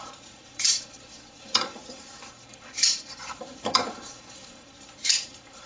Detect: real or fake fake